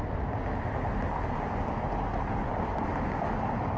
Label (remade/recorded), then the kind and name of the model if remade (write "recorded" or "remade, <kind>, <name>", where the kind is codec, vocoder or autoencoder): recorded